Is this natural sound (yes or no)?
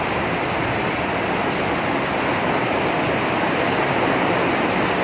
yes